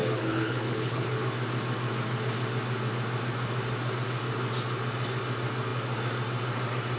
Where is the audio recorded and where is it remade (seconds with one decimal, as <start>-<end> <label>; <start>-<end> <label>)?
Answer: 0.0-1.2 remade; 1.2-7.0 recorded